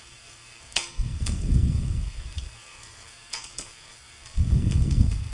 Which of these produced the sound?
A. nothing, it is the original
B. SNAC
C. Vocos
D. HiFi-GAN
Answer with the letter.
B